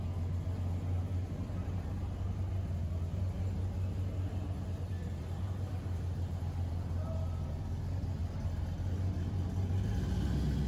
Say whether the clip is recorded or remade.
recorded